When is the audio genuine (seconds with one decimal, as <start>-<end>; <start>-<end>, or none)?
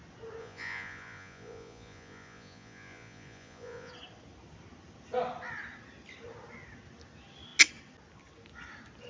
0.0-0.4; 3.9-9.1